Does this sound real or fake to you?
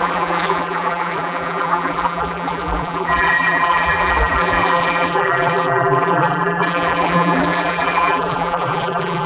fake